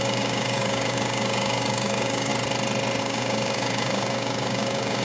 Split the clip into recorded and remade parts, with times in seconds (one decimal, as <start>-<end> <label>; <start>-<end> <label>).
0.0-2.3 remade; 2.3-3.0 recorded; 3.0-5.0 remade